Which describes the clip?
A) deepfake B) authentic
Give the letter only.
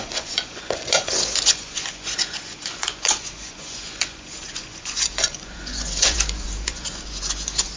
A